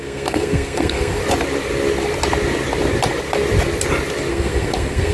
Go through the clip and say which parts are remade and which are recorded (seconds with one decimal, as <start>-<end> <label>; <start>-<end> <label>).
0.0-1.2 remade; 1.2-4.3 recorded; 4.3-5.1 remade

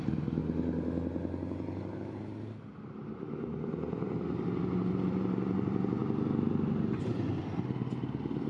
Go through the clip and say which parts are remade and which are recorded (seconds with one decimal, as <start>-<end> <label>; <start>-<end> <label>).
0.0-0.4 remade; 0.4-4.6 recorded; 4.6-8.5 remade

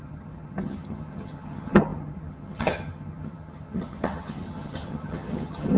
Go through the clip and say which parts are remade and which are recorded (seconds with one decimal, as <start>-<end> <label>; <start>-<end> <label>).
0.0-5.8 remade

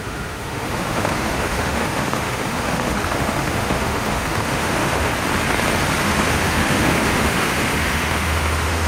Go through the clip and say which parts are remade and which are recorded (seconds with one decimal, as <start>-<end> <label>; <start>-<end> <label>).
0.0-5.1 remade; 5.1-6.0 recorded; 6.0-8.9 remade